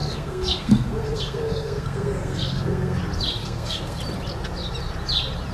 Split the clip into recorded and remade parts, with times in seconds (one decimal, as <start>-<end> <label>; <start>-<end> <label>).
0.0-3.0 remade; 3.0-3.4 recorded; 3.4-4.0 remade; 4.0-5.5 recorded